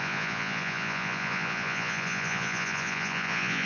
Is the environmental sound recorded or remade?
remade